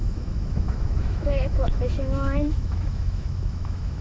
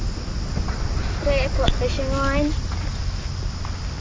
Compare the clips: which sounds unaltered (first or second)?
second